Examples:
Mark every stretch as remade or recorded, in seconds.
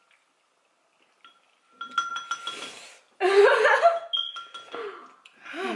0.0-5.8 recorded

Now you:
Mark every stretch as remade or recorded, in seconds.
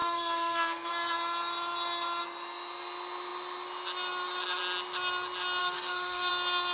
0.0-0.9 remade; 0.9-5.6 recorded; 5.6-6.3 remade; 6.3-6.7 recorded